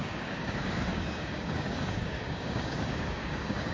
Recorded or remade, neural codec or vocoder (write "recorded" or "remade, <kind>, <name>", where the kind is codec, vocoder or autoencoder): remade, codec, DAC